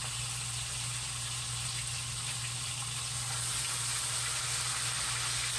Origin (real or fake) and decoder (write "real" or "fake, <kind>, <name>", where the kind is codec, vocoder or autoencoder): real